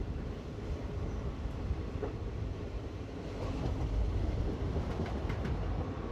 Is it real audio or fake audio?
real